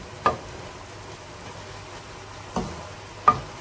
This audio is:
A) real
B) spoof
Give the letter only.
A